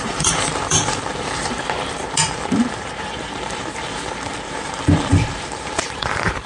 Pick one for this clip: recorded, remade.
remade